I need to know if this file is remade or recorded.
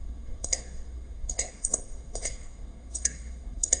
remade